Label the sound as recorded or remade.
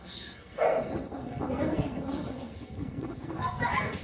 remade